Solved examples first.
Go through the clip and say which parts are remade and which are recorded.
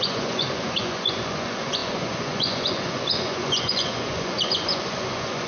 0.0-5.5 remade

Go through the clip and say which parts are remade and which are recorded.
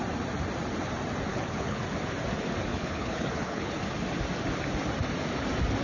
0.0-1.3 recorded; 1.3-1.8 remade; 1.8-2.7 recorded; 2.7-3.8 remade; 3.8-5.8 recorded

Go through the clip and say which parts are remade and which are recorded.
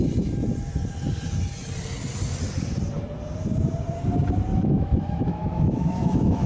0.0-4.5 recorded; 4.5-6.5 remade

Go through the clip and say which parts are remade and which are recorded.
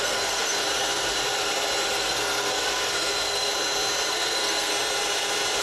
0.0-0.6 remade; 0.6-1.9 recorded; 1.9-3.5 remade; 3.5-4.1 recorded; 4.1-4.7 remade; 4.7-5.6 recorded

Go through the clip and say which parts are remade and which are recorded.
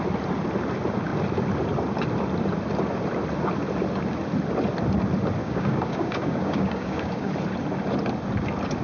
0.0-5.4 recorded; 5.4-7.3 remade; 7.3-8.8 recorded